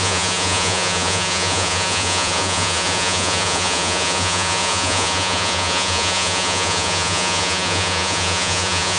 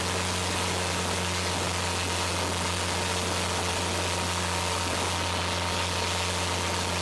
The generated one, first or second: first